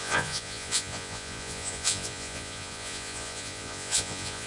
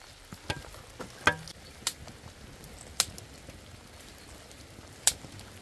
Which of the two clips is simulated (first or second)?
first